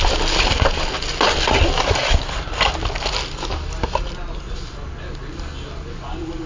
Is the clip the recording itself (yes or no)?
yes